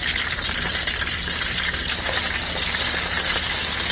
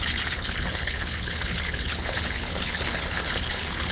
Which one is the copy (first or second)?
second